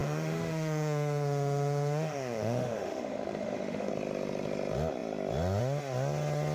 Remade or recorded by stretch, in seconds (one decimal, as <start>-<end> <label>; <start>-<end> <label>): 0.0-3.9 remade; 3.9-6.5 recorded